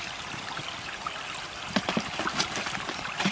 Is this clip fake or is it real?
real